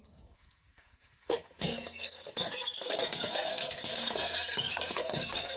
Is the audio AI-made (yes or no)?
yes